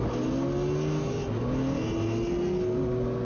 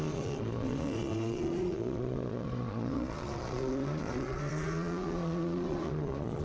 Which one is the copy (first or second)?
second